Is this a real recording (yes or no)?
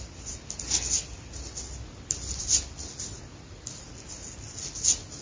yes